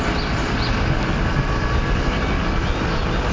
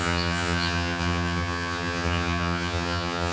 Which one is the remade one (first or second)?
second